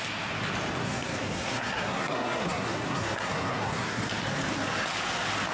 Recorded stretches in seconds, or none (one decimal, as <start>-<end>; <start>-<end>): 0.0-0.8; 4.1-5.5